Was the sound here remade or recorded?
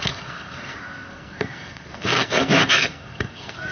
remade